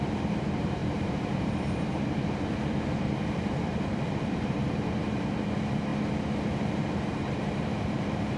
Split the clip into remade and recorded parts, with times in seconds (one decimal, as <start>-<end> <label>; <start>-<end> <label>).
0.0-5.9 remade; 5.9-6.7 recorded; 6.7-8.4 remade